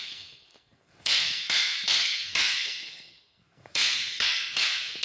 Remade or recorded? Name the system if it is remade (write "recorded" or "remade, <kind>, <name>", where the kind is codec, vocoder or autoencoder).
remade, codec, SNAC